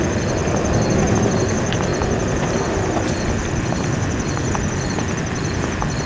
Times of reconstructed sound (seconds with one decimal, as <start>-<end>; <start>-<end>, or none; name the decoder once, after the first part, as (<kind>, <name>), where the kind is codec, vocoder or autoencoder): none